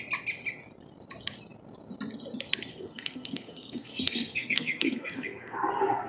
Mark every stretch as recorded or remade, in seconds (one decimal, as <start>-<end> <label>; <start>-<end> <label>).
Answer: 0.0-2.7 recorded; 2.7-6.1 remade